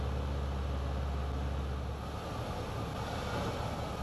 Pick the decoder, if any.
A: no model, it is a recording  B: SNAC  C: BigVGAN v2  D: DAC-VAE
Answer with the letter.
A